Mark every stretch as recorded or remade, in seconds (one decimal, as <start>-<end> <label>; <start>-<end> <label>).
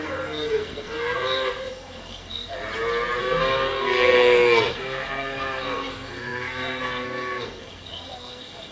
0.0-2.6 remade; 2.6-3.2 recorded; 3.2-8.7 remade